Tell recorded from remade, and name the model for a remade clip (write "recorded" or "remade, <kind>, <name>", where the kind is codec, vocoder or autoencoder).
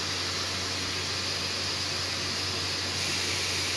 recorded